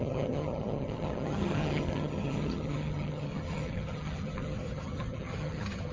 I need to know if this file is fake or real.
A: fake